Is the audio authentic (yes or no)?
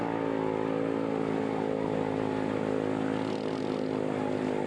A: yes